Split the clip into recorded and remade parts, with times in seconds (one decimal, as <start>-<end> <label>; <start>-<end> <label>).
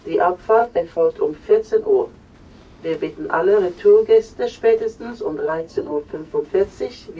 0.0-0.6 recorded; 0.6-1.1 remade; 1.1-5.4 recorded; 5.4-6.5 remade; 6.5-7.2 recorded